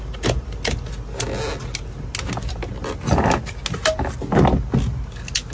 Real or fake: real